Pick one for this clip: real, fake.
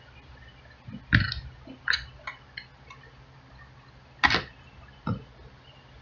real